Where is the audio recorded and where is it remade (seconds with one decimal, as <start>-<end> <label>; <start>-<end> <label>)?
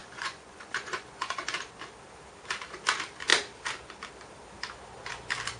0.0-1.4 remade; 1.4-5.6 recorded